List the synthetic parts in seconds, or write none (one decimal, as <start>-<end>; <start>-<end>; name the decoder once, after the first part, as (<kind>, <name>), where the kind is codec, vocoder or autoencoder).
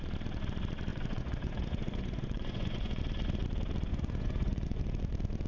0.9-3.0 (vocoder, Vocos); 3.9-4.8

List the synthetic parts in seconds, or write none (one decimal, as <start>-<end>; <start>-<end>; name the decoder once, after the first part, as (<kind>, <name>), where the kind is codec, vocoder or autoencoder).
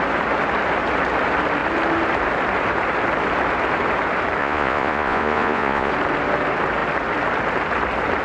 4.4-5.9 (vocoder, Vocos)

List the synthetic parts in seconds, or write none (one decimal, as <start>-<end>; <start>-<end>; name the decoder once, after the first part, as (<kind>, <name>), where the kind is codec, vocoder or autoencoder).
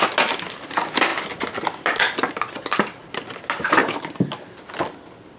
none